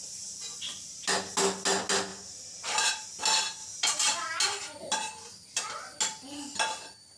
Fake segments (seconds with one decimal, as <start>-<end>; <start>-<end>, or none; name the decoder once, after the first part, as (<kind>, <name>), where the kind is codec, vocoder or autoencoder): 0.0-0.7 (vocoder, BigVGAN v2); 2.1-3.1; 3.6-4.4